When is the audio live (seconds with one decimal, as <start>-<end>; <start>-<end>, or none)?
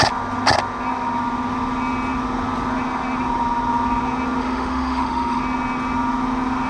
0.0-4.4; 5.4-6.7